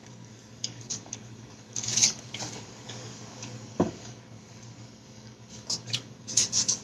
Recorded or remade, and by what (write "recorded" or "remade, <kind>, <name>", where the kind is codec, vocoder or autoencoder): remade, codec, DAC